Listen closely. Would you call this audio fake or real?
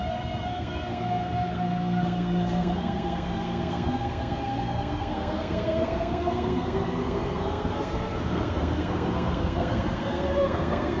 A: fake